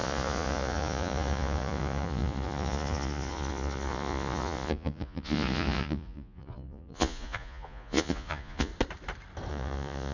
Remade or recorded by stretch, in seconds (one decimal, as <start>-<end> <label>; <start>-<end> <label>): 0.0-8.7 remade; 8.7-9.5 recorded; 9.5-10.1 remade